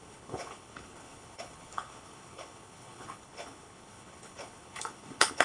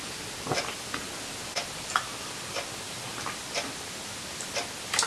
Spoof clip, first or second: first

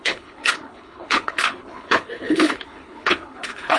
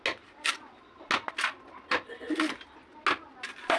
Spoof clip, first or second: first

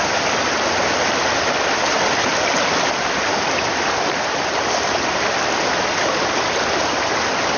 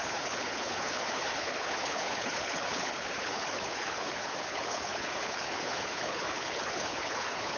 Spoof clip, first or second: second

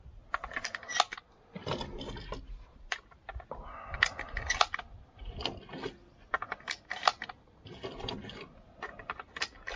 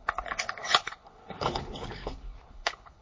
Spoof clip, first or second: second